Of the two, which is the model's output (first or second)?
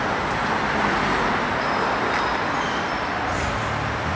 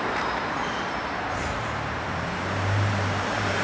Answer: second